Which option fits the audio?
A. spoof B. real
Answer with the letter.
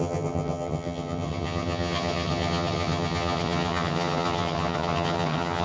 A